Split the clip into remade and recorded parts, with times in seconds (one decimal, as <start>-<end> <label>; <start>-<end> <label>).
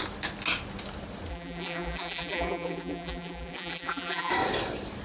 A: 0.0-1.3 recorded; 1.3-4.3 remade; 4.3-5.0 recorded